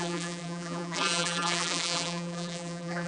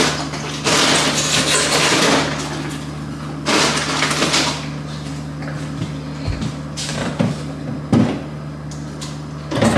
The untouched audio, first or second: second